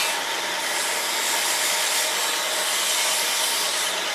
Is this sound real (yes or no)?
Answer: yes